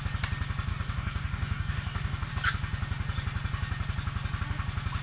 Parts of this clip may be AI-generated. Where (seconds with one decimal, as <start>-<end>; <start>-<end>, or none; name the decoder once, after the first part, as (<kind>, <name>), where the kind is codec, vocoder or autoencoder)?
0.7-2.3 (codec, DAC)